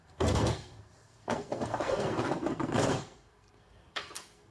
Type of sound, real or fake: fake